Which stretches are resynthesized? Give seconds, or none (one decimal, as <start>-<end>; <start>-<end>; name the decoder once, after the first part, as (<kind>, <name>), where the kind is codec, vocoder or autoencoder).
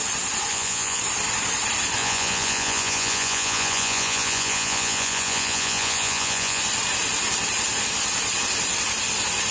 0.5-1.0 (vocoder, Vocos); 2.0-6.6